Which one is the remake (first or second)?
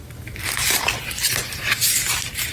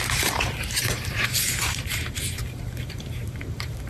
second